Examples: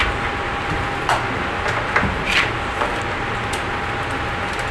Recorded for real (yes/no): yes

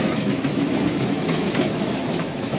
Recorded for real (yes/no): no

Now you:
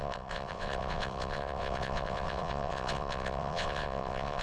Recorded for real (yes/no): no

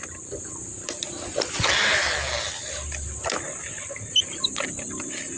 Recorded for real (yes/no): yes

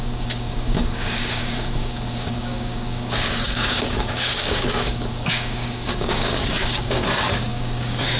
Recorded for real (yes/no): no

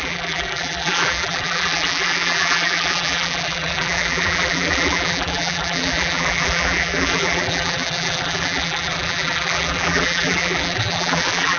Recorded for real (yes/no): no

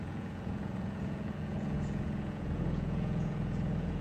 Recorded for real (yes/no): no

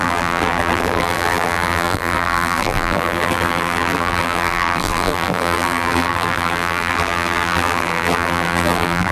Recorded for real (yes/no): no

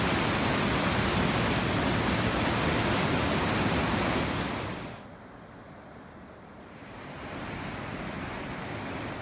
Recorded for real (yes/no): yes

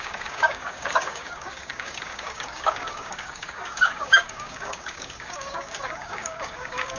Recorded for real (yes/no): no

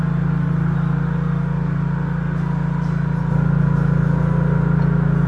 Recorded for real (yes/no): yes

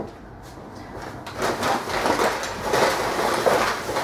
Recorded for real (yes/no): yes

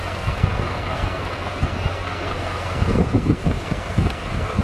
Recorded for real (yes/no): no